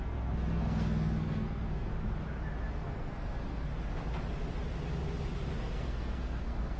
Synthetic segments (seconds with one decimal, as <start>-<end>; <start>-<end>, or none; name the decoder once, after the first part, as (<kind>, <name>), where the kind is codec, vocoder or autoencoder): 0.0-1.9 (codec, SNAC); 2.7-3.7; 5.6-6.8

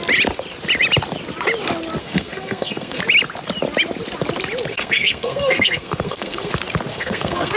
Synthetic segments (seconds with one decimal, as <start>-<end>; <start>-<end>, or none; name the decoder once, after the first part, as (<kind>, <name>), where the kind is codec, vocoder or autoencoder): 2.0-3.0 (codec, SNAC); 4.7-6.5; 6.9-7.6

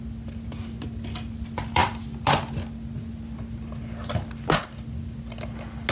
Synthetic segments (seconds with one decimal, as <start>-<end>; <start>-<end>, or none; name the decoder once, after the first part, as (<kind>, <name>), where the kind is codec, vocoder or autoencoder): none

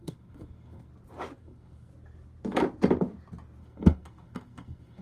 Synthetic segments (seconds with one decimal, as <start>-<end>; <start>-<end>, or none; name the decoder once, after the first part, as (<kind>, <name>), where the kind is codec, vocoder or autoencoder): 0.0-0.9 (codec, SNAC); 1.4-1.9; 3.6-5.0

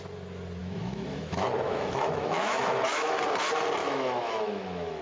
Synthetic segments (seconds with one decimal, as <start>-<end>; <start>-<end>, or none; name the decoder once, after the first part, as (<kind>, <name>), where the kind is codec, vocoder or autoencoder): 0.6-3.2 (autoencoder, DAC-VAE); 3.8-5.0

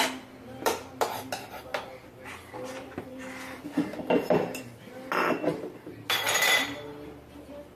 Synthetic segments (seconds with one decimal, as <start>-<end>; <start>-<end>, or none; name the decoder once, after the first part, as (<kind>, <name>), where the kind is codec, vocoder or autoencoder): none

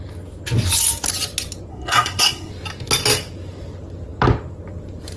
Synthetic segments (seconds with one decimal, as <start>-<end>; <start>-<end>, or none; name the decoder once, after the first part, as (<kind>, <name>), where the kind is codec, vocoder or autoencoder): 1.7-2.5 (codec, SNAC)